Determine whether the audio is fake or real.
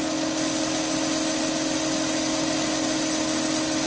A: real